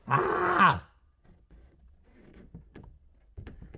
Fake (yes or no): yes